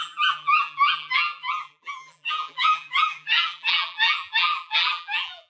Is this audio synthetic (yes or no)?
yes